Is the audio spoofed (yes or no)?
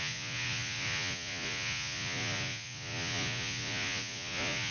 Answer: yes